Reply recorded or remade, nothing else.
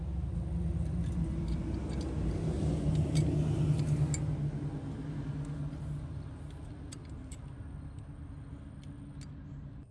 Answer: recorded